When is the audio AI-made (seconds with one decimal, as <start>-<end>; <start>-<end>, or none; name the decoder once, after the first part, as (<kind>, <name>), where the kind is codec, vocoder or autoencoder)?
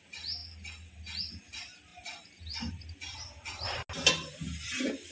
none